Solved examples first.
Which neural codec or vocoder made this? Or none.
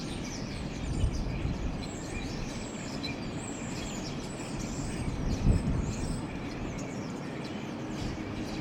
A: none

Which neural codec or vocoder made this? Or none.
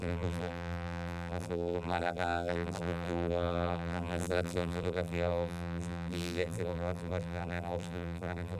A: vocoder, BigVGAN v2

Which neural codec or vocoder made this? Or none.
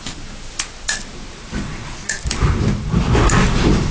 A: none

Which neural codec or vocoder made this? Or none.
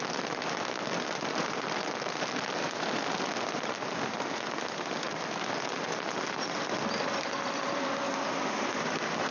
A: none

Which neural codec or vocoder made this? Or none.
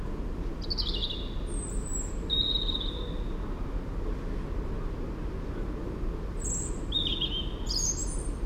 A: none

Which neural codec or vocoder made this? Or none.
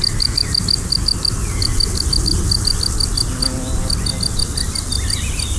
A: none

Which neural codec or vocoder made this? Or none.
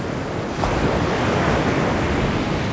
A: none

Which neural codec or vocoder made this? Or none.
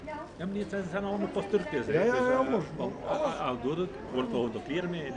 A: none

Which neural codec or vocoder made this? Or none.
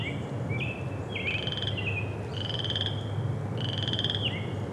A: none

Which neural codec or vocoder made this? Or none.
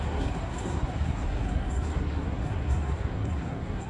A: codec, SNAC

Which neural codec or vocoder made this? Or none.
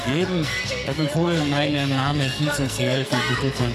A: codec, SNAC